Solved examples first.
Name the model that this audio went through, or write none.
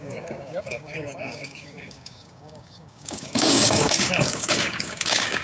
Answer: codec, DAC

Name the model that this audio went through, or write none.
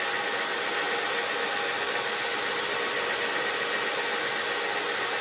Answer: none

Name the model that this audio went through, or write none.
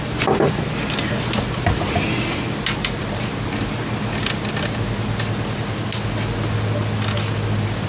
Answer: none